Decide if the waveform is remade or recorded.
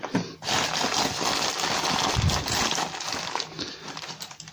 recorded